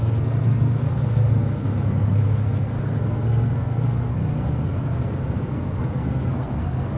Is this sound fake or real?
fake